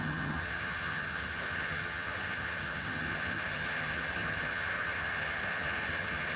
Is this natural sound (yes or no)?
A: no